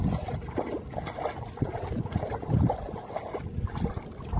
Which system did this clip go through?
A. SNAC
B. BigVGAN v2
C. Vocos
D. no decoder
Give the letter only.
D